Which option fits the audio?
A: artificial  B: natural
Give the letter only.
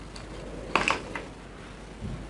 B